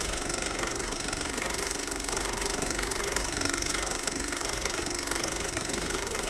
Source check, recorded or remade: remade